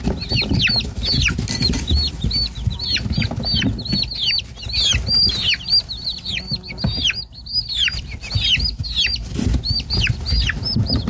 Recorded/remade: recorded